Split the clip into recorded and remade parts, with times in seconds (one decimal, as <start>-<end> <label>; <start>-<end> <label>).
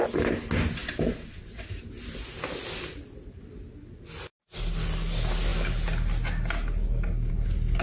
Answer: 0.0-7.8 recorded